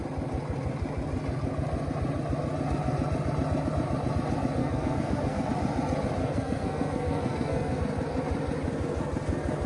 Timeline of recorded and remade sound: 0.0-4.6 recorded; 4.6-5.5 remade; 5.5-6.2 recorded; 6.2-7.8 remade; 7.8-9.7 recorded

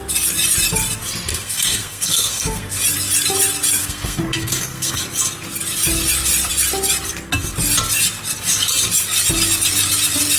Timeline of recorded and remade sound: 0.0-1.3 recorded; 1.3-2.8 remade; 2.8-3.8 recorded; 3.8-5.0 remade; 5.0-10.4 recorded

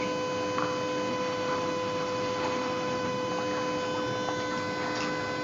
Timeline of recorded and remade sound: 0.0-1.1 recorded; 1.1-3.3 remade; 3.3-5.4 recorded